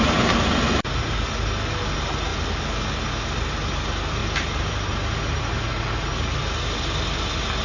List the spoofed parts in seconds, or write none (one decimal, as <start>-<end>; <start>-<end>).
none